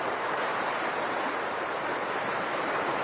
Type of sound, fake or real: fake